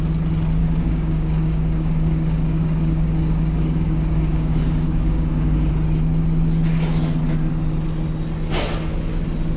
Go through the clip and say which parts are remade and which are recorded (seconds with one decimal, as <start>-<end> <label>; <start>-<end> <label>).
0.0-0.6 recorded; 0.6-5.7 remade; 5.7-9.6 recorded